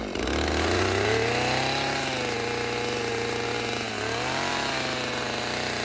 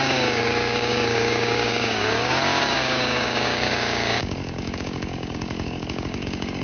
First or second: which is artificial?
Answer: second